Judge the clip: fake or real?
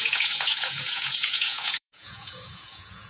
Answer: fake